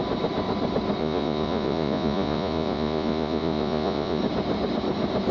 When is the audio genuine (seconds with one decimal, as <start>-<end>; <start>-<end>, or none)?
0.0-1.0; 4.2-5.3